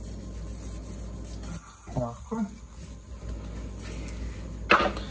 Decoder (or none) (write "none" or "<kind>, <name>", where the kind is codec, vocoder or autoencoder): none